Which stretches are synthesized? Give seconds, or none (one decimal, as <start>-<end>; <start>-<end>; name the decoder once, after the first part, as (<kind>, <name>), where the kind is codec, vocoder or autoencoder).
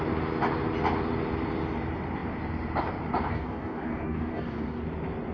3.3-4.8 (codec, DAC)